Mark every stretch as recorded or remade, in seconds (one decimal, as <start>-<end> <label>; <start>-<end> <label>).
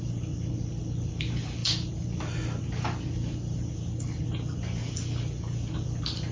0.0-6.3 recorded